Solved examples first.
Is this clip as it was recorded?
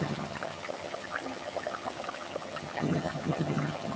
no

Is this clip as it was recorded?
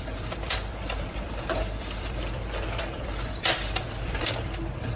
no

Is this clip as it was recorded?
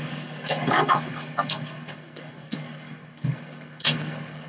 no